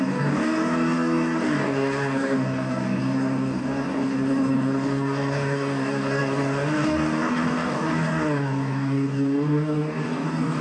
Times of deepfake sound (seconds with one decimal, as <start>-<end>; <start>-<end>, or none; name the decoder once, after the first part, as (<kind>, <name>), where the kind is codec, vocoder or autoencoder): 0.0-10.6 (codec, DAC)